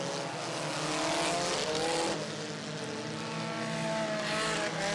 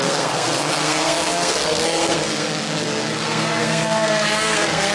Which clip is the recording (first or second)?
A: first